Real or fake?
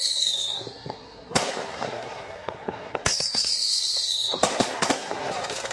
fake